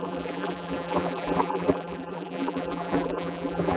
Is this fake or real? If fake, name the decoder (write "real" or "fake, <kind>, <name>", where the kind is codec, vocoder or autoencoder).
fake, vocoder, BigVGAN v2